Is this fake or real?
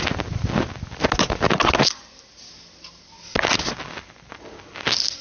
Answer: real